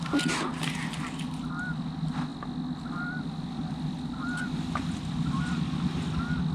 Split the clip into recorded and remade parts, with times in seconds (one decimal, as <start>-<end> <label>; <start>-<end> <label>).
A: 0.0-6.5 recorded